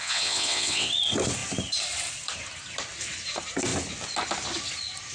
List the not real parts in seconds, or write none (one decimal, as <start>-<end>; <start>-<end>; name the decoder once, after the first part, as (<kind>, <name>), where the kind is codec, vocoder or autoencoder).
0.0-0.9 (vocoder, WaveNeXt)